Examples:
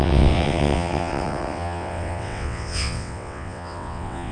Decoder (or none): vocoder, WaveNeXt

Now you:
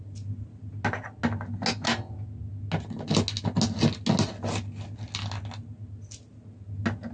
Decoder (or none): none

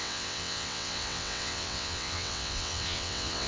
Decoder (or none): vocoder, WaveNeXt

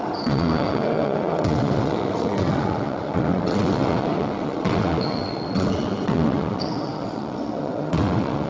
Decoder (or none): vocoder, WaveNeXt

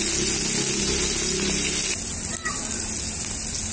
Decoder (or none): none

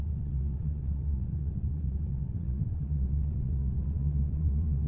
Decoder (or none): vocoder, WaveNeXt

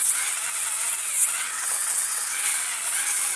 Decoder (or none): vocoder, WaveNeXt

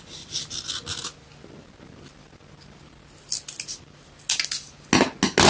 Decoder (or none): none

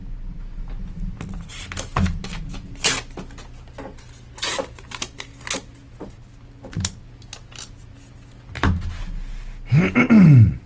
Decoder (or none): none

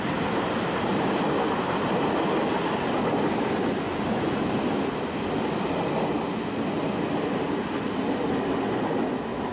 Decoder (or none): none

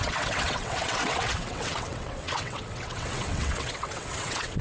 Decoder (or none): vocoder, WaveNeXt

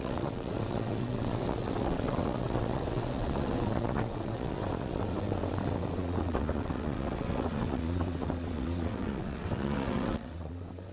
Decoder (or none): vocoder, WaveNeXt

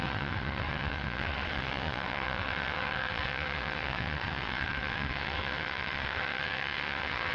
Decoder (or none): vocoder, WaveNeXt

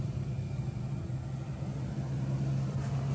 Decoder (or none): none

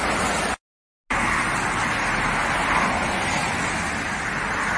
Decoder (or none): none